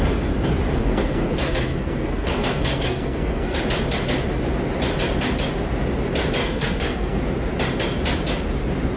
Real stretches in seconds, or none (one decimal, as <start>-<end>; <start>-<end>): 0.0-0.8; 3.6-6.4; 7.2-9.0

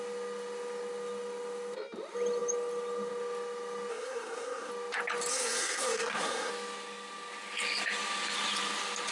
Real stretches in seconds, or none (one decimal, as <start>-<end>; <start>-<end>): 0.0-3.9; 4.7-5.3; 6.5-9.1